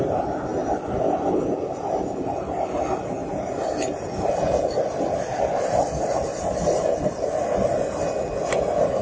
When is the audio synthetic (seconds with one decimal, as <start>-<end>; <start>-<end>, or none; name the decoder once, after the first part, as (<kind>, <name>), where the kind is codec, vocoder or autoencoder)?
none